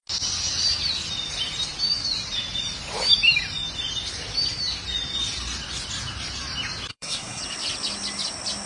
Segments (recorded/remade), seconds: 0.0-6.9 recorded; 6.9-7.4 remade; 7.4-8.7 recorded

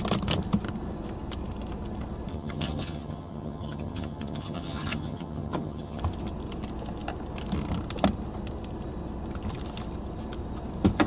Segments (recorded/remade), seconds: 0.0-2.3 recorded; 2.3-6.0 remade; 6.0-11.1 recorded

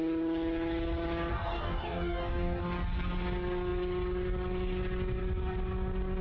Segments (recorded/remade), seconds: 0.0-1.3 recorded; 1.3-2.6 remade; 2.6-6.2 recorded

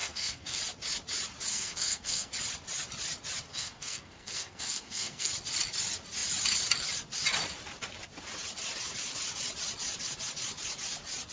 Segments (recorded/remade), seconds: 0.0-0.6 remade; 0.6-1.5 recorded; 1.5-2.3 remade; 2.3-3.5 recorded; 3.5-5.3 remade; 5.3-11.3 recorded

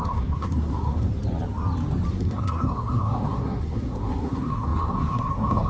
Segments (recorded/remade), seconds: 0.0-1.1 remade; 1.1-2.1 recorded; 2.1-5.7 remade